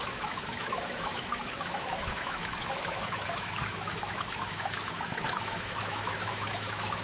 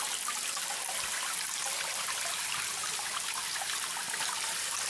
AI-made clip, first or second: first